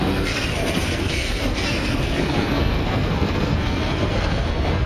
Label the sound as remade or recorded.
remade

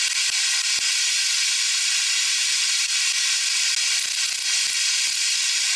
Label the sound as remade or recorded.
recorded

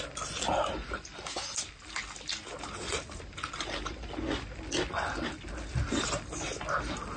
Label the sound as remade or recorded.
recorded